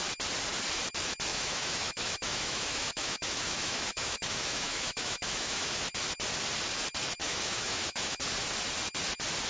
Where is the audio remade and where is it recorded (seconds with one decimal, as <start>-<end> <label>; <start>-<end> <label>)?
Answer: 0.0-1.3 recorded; 1.3-5.8 remade; 5.8-7.2 recorded; 7.2-8.2 remade; 8.2-9.5 recorded